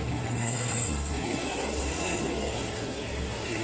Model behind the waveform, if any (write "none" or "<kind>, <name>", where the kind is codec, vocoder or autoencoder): codec, SNAC